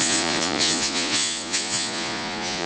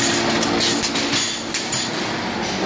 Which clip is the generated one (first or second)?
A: first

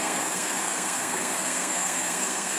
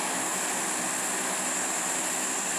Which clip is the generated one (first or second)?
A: first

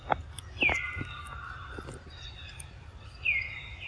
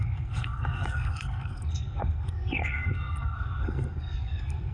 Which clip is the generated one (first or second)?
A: second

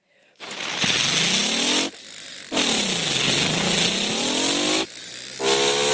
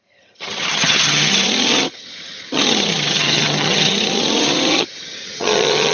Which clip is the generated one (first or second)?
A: second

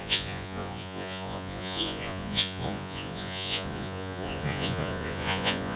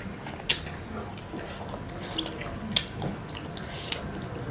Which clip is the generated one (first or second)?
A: first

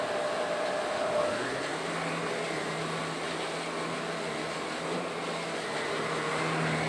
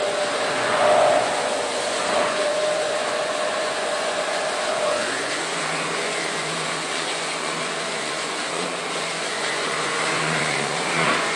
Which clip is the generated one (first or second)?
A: second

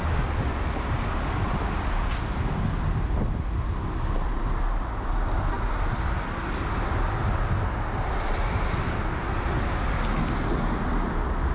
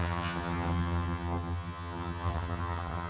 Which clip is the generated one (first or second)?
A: second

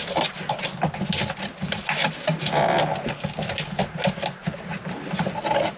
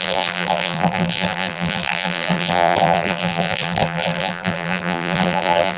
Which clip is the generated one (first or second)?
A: second